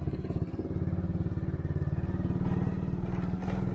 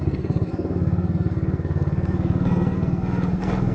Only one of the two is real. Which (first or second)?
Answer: first